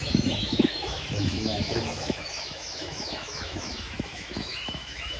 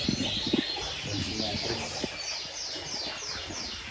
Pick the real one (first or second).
second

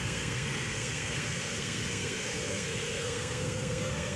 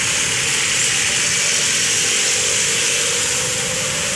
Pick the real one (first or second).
second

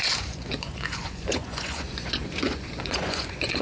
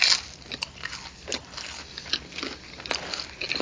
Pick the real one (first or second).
second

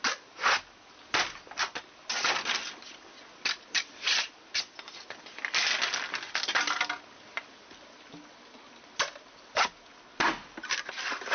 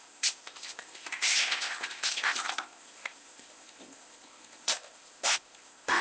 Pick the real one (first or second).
first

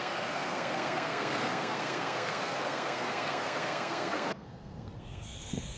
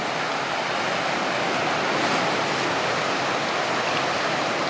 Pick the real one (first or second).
second